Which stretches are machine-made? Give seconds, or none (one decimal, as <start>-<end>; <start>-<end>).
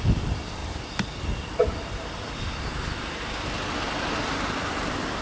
none